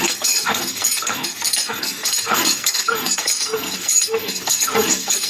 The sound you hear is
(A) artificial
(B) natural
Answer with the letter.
A